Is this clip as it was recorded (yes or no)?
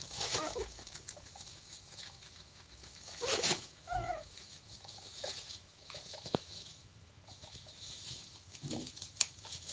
no